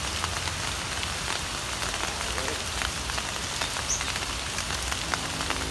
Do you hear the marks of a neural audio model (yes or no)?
no